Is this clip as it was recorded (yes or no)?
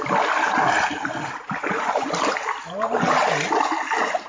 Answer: yes